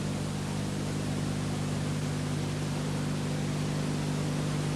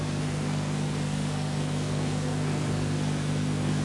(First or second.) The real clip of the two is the first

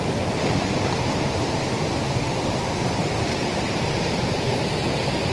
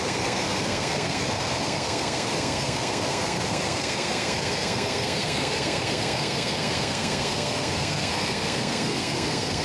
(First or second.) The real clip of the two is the first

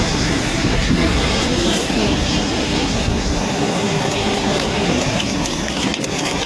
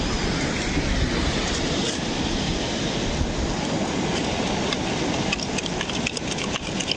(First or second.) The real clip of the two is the second